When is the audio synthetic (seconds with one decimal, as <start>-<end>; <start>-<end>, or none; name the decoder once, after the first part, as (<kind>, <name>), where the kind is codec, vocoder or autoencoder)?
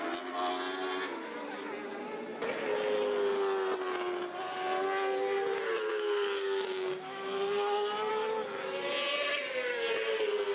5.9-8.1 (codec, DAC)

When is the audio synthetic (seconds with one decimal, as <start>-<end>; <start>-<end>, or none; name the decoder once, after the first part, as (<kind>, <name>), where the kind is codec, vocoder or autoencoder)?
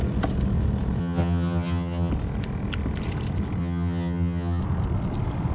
1.0-2.1 (vocoder, HiFi-GAN); 3.6-4.6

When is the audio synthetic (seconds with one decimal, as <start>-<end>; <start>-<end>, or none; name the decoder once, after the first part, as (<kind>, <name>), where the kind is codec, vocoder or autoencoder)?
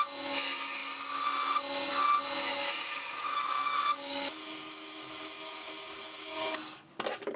2.5-6.9 (codec, DAC)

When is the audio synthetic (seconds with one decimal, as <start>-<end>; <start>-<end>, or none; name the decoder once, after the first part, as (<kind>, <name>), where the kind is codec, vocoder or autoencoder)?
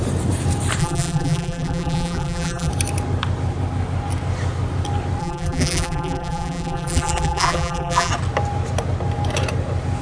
0.8-2.7 (vocoder, BigVGAN v2); 5.2-8.1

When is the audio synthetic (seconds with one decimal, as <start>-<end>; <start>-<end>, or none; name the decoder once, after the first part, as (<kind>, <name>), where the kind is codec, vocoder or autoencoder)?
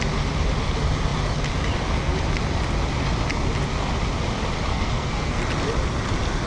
4.7-5.4 (codec, SNAC)